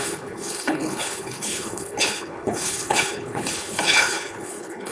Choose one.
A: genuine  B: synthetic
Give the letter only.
B